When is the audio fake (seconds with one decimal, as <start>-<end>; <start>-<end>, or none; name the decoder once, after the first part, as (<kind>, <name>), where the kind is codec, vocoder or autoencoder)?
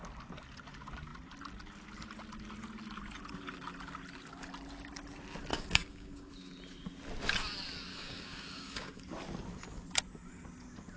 5.5-6.3 (codec, DAC); 7.9-9.0